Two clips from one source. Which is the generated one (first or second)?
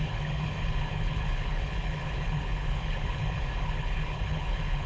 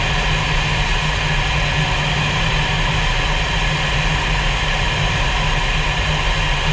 first